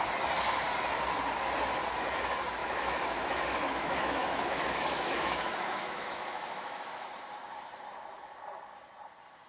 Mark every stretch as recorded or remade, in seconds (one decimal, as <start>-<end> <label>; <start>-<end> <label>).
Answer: 0.0-2.6 recorded; 2.6-7.1 remade; 7.1-9.5 recorded